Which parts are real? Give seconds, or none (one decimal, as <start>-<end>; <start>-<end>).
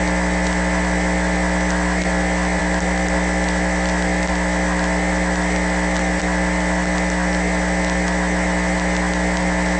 0.0-9.8